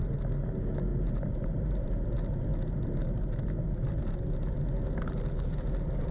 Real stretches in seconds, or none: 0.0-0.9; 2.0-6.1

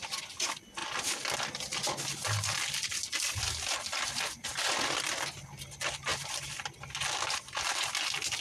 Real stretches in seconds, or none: 2.2-3.7

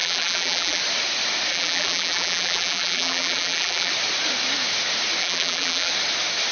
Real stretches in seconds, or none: 0.8-1.5; 3.9-5.2; 5.9-6.5

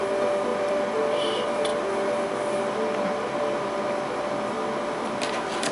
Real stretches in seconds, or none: 0.0-5.7

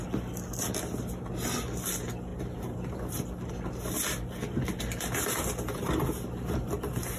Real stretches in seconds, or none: 0.0-2.3; 3.5-5.7